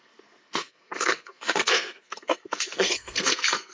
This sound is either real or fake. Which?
fake